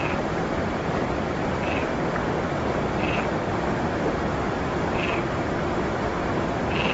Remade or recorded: recorded